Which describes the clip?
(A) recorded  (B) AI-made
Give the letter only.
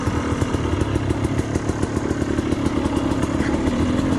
A